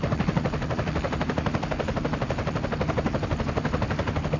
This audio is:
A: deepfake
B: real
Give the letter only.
B